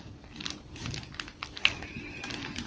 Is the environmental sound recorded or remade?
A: recorded